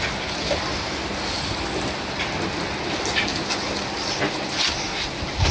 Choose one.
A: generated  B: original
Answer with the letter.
B